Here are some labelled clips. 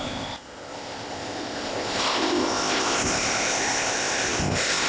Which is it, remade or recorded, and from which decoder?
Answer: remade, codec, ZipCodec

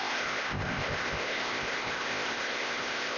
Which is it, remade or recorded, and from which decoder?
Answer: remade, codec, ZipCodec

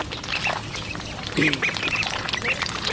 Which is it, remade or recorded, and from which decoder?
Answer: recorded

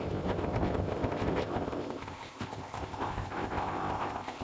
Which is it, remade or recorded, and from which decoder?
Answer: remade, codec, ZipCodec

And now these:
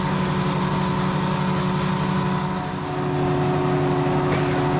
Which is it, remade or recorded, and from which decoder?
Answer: recorded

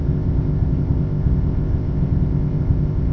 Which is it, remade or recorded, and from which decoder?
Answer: remade, codec, ZipCodec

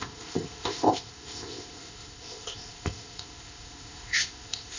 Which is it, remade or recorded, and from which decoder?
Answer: remade, codec, ZipCodec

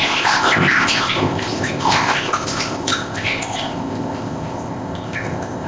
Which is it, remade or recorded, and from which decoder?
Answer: remade, codec, ZipCodec